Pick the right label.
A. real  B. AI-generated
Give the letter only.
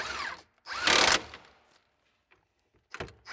A